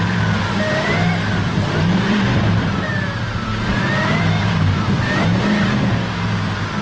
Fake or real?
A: fake